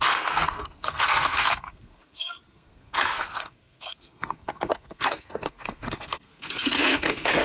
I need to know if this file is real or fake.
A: fake